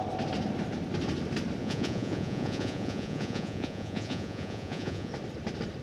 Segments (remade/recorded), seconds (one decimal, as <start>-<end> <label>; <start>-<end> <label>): 0.0-1.6 recorded; 1.6-5.1 remade; 5.1-5.8 recorded